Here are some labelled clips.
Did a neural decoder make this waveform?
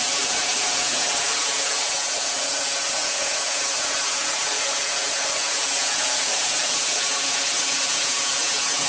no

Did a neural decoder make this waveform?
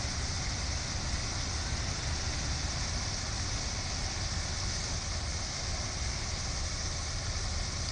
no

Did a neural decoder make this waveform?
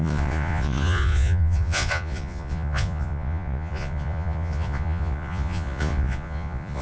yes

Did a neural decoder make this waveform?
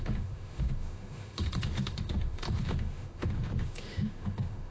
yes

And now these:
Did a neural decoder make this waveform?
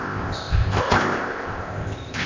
yes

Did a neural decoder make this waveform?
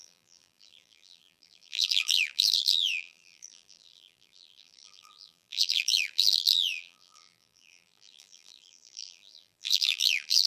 yes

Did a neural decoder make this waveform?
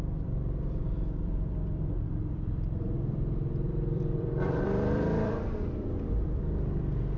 yes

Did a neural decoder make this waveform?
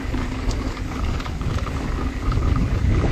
yes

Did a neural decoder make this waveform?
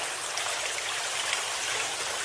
no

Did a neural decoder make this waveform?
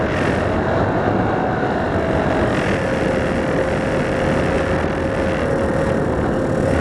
no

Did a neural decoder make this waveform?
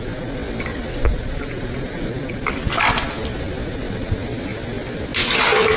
no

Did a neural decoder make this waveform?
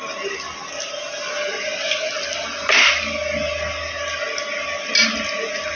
no